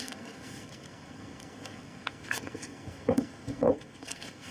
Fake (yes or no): yes